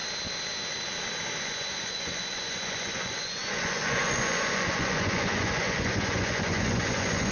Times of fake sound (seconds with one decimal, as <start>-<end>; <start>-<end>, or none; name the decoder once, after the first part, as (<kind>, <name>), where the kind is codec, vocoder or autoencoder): 1.4-7.3 (vocoder, Vocos)